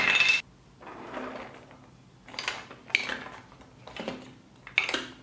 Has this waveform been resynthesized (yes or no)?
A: no